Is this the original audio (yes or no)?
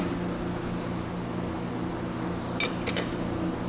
yes